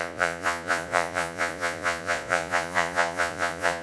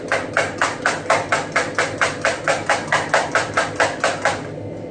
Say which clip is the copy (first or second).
first